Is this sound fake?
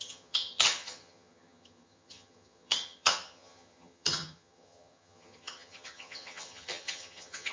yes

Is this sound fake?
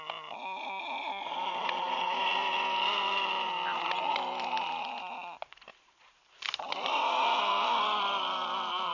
no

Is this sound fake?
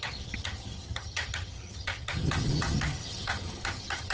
yes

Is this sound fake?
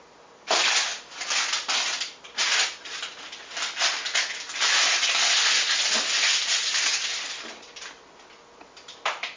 no